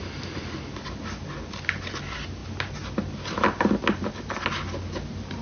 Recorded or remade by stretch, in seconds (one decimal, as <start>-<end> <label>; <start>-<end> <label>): 0.0-5.4 recorded